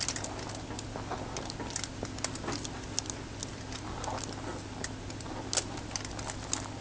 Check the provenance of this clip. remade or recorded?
recorded